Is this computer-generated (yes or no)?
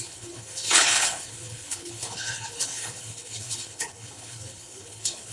yes